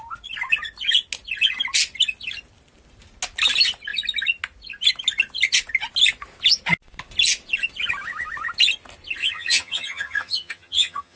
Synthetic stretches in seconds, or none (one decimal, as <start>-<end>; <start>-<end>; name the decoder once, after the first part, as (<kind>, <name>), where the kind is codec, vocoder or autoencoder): 9.2-11.2 (vocoder, HiFi-GAN)

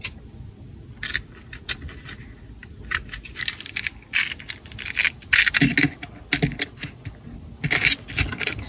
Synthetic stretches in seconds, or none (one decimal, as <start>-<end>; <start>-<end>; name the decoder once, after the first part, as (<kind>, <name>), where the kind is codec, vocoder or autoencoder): none